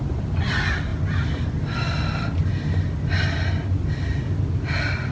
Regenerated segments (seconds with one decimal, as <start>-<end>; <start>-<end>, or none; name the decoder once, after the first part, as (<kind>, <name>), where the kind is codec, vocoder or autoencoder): none